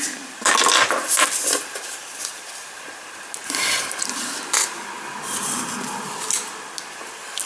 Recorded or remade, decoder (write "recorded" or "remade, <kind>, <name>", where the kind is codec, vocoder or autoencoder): recorded